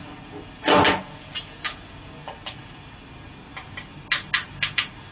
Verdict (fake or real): real